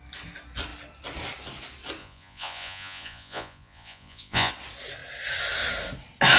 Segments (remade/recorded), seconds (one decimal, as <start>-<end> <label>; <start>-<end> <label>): 0.0-2.0 recorded; 2.0-4.5 remade; 4.5-6.4 recorded